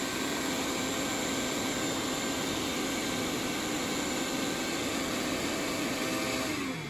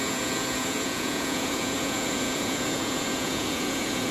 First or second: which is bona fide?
first